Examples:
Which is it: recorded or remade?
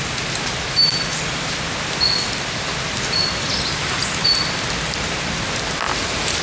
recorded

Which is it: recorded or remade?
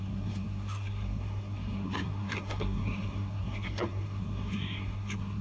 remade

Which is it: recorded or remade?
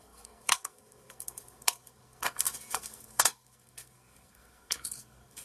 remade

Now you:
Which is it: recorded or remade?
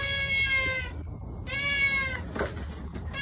recorded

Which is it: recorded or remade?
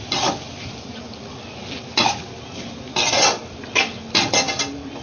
recorded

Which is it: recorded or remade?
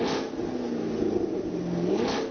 recorded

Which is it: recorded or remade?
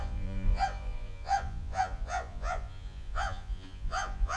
remade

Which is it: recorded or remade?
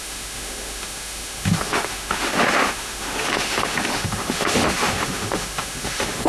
remade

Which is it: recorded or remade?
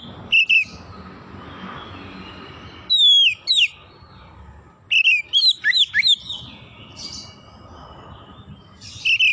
recorded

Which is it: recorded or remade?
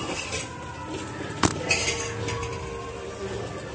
recorded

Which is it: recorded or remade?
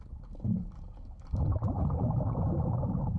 recorded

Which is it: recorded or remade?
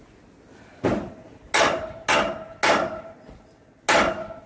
recorded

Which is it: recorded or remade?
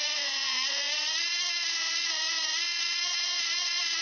remade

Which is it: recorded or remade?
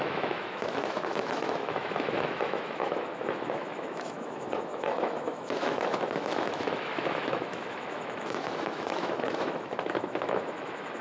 remade